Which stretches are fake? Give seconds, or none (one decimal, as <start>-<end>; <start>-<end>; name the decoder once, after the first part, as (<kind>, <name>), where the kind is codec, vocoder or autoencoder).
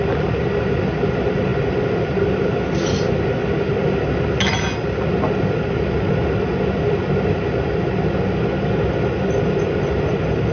none